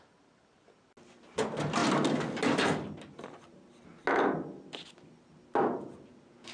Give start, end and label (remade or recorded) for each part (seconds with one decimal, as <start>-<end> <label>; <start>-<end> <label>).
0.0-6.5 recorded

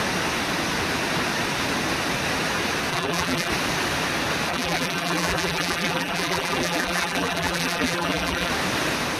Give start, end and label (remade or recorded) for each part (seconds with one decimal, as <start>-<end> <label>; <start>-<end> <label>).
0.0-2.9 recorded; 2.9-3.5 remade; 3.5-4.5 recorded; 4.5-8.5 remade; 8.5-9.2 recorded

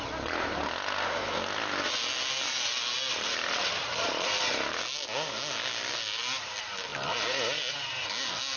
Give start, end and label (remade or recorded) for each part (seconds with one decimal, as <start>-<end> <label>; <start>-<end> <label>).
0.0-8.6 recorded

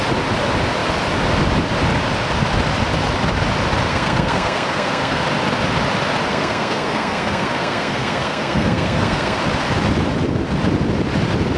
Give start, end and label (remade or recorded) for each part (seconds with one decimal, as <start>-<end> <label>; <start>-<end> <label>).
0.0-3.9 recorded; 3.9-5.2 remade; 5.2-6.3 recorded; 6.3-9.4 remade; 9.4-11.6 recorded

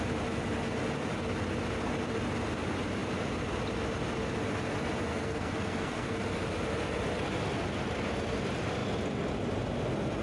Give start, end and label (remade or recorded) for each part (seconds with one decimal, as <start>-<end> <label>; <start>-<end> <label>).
0.0-5.1 recorded; 5.1-6.2 remade; 6.2-10.2 recorded

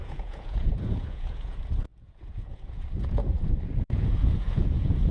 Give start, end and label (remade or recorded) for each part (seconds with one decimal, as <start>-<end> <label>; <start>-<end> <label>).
0.0-5.1 remade

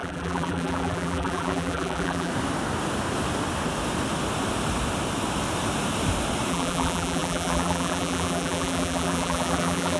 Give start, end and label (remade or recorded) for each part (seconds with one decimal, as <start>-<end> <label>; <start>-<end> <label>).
0.0-2.3 remade; 2.3-6.5 recorded; 6.5-10.0 remade

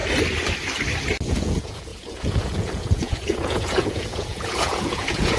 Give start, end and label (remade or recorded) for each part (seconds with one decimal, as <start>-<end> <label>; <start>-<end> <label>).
0.0-1.3 recorded; 1.3-5.4 remade